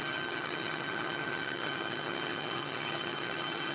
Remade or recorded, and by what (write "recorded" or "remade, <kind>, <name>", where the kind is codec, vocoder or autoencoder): remade, vocoder, HiFi-GAN